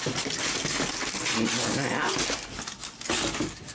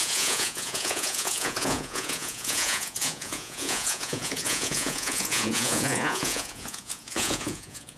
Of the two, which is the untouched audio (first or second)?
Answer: first